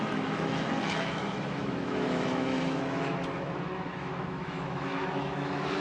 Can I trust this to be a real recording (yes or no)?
no